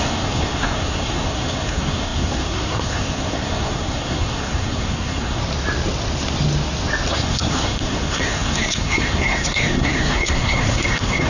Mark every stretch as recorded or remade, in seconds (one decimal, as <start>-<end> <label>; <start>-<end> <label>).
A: 0.0-5.4 remade; 5.4-7.1 recorded; 7.1-11.3 remade